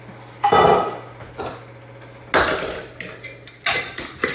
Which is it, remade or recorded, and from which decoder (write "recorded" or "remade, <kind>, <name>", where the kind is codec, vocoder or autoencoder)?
recorded